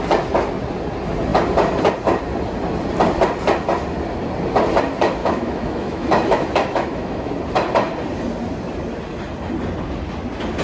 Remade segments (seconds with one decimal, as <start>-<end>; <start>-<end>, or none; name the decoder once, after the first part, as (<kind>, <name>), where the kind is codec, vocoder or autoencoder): 5.2-7.3 (autoencoder, DAC-VAE)